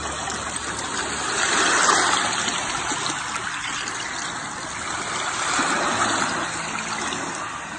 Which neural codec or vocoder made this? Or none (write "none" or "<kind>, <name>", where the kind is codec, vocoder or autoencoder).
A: none